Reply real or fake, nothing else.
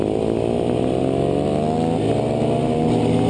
real